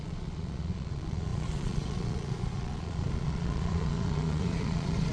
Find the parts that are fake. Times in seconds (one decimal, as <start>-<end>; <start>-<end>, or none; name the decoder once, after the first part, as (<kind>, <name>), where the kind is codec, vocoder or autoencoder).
0.0-5.1 (vocoder, Vocos)